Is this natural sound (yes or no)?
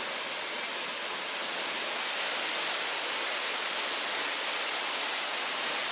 yes